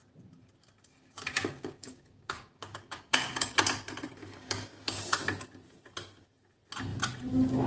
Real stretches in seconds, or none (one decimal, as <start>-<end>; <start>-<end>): 0.0-1.4; 3.5-4.2; 5.0-7.7